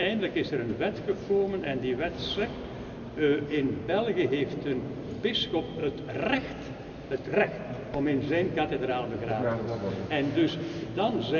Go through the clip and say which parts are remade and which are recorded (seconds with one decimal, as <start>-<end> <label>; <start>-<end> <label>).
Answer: 0.0-11.4 recorded